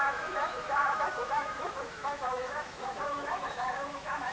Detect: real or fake fake